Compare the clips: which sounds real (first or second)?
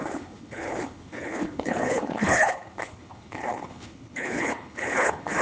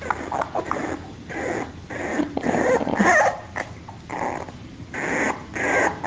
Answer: second